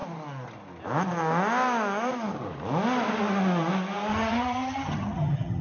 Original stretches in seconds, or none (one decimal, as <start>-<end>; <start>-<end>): 0.0-4.1